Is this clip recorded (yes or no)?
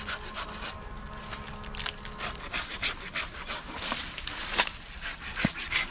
yes